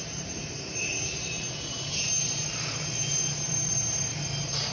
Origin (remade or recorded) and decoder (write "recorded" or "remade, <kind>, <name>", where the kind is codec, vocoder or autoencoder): remade, vocoder, BigVGAN v2